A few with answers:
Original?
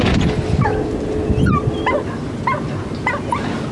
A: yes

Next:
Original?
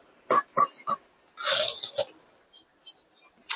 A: yes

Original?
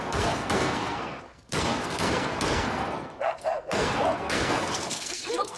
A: no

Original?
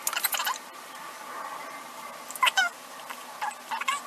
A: yes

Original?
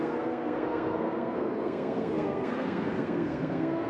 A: no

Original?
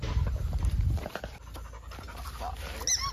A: yes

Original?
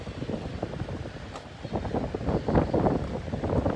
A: yes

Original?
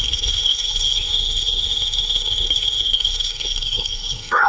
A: no